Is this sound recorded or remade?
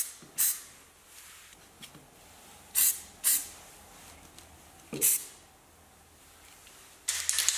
recorded